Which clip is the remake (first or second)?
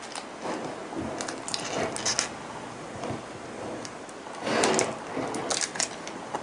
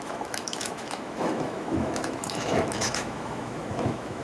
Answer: second